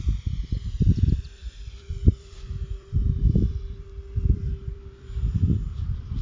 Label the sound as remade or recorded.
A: remade